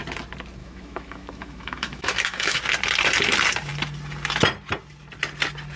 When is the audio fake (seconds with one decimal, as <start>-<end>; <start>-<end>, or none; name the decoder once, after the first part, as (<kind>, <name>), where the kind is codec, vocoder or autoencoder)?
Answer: 0.6-2.6 (autoencoder, DAC-VAE)